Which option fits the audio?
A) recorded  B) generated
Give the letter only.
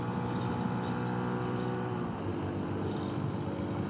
A